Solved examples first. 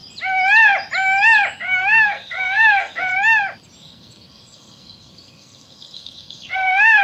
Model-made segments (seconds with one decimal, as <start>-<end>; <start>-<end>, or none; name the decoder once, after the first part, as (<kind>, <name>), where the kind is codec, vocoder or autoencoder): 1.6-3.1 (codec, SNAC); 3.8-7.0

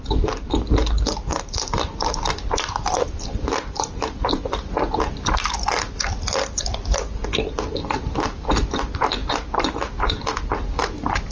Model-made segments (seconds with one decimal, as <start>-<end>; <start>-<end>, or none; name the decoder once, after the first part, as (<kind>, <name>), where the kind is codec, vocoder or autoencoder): none

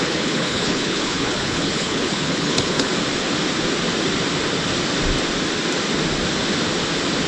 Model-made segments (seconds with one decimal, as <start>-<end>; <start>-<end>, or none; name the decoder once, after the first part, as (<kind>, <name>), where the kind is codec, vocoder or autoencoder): 0.0-2.9 (codec, HILCodec)

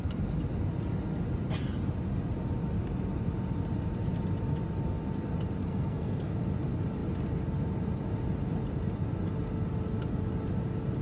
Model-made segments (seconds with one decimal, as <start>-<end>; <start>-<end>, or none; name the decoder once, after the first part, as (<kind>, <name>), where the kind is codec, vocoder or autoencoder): 5.6-6.3 (codec, SNAC)

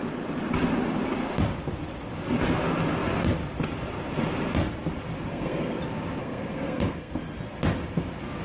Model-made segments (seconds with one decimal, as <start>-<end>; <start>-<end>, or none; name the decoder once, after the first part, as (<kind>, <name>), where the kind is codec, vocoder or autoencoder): 5.3-5.8 (codec, SNAC); 6.2-7.1

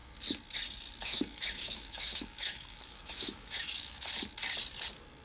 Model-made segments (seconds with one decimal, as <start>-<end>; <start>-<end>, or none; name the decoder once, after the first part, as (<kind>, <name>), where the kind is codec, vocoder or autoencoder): 1.0-4.1 (autoencoder, DAC-VAE)

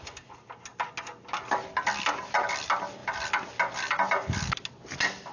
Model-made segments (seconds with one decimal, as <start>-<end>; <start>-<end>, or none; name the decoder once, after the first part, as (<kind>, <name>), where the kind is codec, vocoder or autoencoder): none

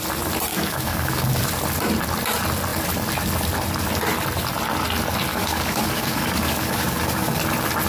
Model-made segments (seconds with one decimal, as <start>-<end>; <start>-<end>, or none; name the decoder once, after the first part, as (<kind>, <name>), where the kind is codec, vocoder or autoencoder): 0.5-1.4 (codec, DAC); 5.3-7.4